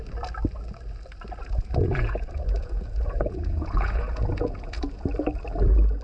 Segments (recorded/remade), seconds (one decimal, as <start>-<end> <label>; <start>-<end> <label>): 0.0-1.4 recorded; 1.4-5.0 remade; 5.0-6.0 recorded